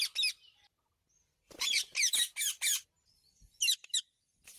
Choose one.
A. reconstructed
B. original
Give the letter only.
B